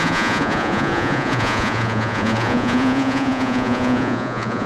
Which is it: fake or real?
fake